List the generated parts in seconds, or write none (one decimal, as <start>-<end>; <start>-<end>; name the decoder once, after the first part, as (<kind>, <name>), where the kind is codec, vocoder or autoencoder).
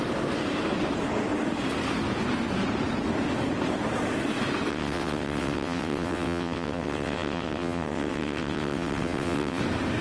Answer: 4.7-9.6 (vocoder, WaveNeXt)